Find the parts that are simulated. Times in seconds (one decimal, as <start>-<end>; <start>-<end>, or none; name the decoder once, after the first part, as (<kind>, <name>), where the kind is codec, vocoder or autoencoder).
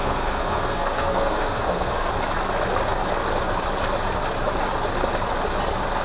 0.0-2.1 (codec, SNAC)